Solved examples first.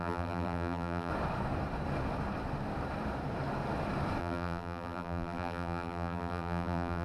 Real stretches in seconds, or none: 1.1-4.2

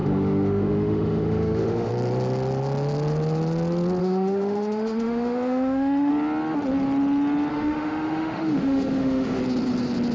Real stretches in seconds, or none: 1.9-4.0; 6.1-7.5; 9.4-10.1

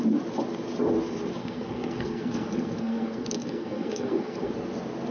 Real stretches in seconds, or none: 0.0-1.4; 4.5-5.1